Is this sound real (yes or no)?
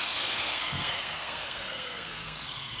no